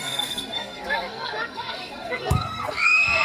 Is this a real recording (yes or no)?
no